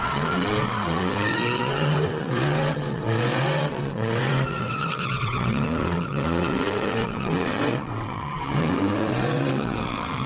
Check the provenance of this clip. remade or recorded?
remade